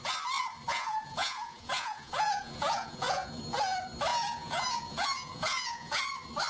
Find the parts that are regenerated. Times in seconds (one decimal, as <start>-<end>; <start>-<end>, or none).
0.7-3.4; 4.1-6.0